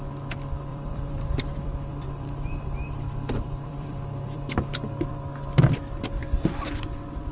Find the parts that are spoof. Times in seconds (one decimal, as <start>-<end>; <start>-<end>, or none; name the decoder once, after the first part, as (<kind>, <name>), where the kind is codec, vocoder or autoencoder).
0.7-5.1 (vocoder, BigVGAN v2); 6.2-7.3